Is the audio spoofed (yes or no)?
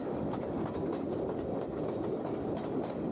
no